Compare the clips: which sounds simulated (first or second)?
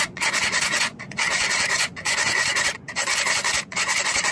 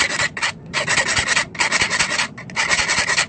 first